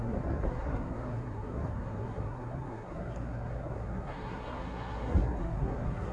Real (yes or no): no